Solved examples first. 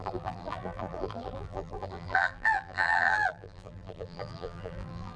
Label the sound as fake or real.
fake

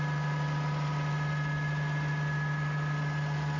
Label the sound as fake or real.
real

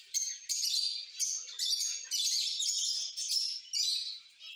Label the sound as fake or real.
real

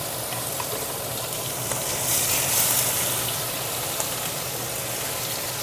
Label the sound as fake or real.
real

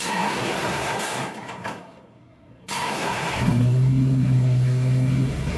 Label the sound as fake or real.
fake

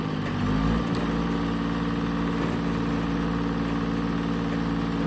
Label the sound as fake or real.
real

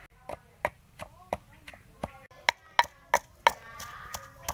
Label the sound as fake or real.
real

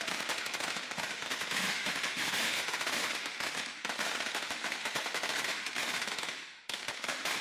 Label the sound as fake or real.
fake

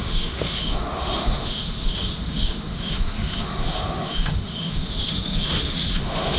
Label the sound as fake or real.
fake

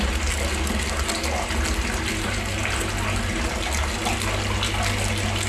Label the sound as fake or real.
real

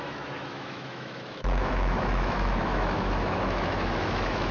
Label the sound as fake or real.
fake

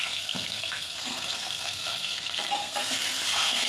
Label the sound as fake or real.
fake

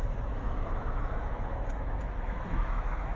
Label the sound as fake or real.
fake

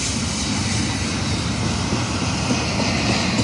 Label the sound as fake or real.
real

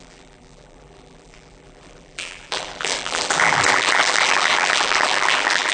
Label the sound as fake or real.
fake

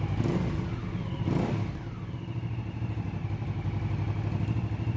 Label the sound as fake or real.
real